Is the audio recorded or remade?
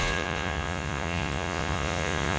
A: remade